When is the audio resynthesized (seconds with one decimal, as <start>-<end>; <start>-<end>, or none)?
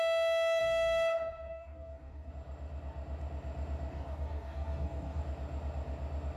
0.6-2.3; 3.9-5.2